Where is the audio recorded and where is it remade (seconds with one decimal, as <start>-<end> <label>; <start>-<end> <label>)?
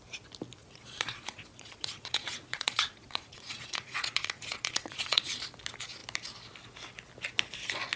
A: 0.0-0.6 recorded; 0.6-5.4 remade; 5.4-8.0 recorded